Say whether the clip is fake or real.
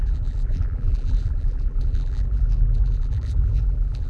fake